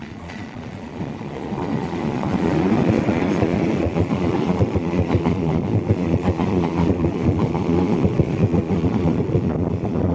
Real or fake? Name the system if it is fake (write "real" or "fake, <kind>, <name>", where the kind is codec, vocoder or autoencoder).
fake, vocoder, Vocos